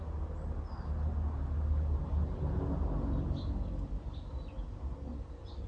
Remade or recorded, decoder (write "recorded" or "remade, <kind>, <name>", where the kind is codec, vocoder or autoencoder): recorded